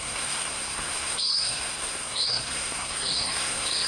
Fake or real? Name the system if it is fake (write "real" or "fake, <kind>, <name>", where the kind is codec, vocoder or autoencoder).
fake, codec, SNAC